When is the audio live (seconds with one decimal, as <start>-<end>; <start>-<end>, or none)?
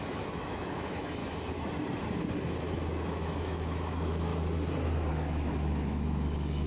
1.2-3.1; 4.3-5.1